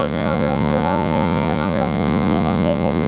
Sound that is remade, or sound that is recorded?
remade